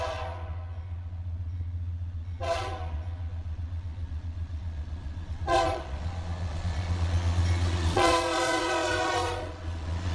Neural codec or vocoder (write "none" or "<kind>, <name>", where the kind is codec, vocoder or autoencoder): vocoder, Vocos